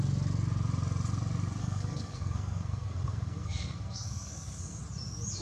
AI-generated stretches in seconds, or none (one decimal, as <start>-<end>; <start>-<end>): 1.6-4.8